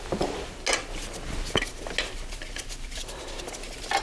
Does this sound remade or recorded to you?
recorded